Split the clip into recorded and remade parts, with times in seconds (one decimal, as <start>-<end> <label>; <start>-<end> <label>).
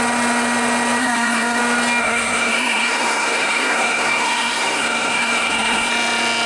0.0-1.0 recorded; 1.0-1.6 remade; 1.6-2.0 recorded; 2.0-5.9 remade; 5.9-6.5 recorded